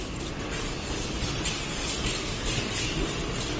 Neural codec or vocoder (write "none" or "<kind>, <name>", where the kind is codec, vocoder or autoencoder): none